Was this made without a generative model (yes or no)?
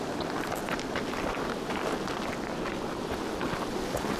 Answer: yes